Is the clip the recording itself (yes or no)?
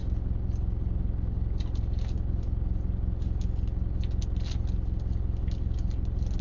yes